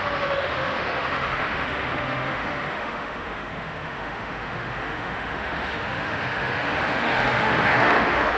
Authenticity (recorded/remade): remade